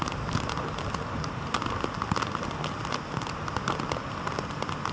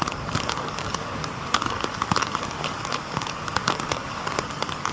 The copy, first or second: second